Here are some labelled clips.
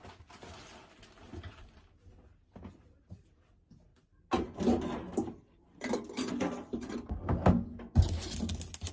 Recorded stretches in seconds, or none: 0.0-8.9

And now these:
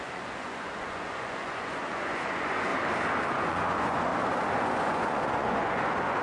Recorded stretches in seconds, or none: 2.7-3.3; 4.1-4.6

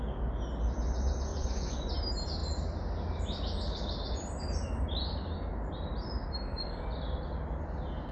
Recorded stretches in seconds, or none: 0.0-1.3; 1.9-8.1

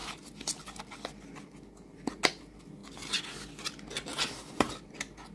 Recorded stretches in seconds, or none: 0.0-5.3

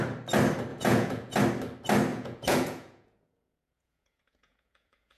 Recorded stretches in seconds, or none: 0.0-0.7; 1.4-2.1

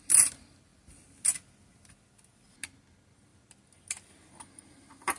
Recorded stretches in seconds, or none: 0.0-5.2

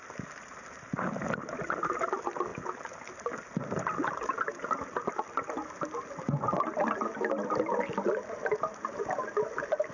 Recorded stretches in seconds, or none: 0.0-9.9